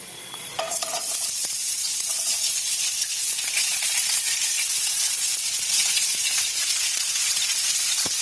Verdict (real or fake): fake